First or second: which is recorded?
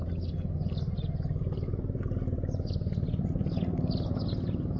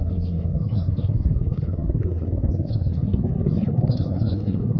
first